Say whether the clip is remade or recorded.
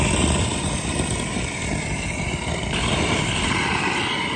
remade